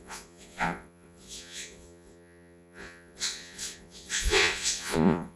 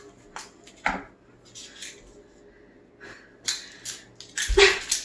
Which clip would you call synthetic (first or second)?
first